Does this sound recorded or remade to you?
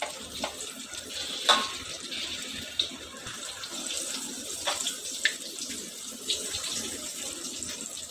recorded